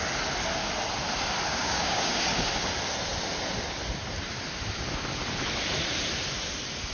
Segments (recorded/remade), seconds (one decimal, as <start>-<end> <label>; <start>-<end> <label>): 0.0-1.5 recorded; 1.5-2.2 remade; 2.2-6.9 recorded